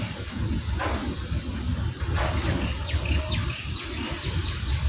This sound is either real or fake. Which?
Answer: real